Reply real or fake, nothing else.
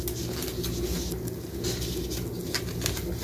real